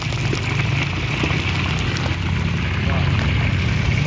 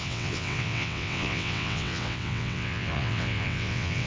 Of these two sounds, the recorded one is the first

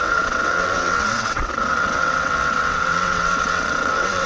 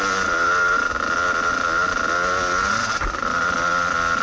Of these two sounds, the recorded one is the second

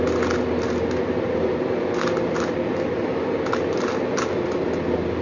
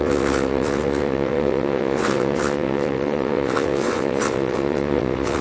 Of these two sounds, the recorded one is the first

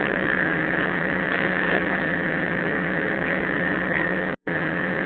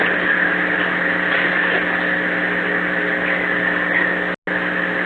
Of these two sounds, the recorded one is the second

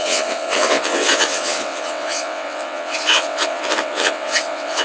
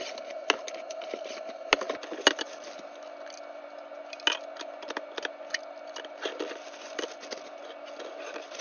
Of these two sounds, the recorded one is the second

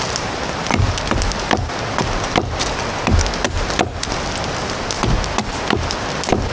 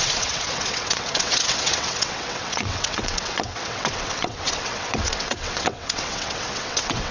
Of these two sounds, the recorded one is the first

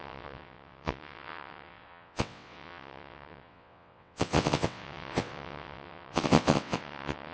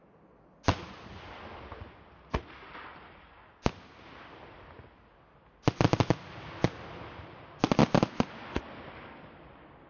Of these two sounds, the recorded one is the second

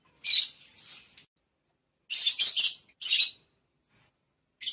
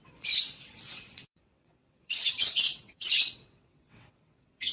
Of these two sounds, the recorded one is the first